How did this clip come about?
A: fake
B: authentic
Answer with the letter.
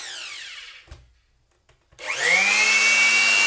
B